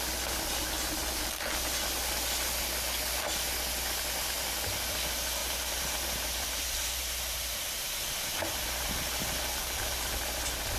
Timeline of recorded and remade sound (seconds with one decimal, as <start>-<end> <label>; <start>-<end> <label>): 0.0-5.4 recorded; 5.4-10.1 remade; 10.1-10.8 recorded